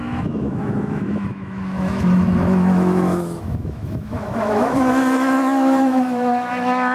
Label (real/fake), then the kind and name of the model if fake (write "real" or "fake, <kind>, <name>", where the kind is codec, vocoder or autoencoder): fake, autoencoder, DAC-VAE